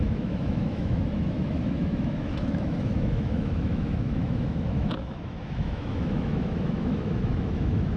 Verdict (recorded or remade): remade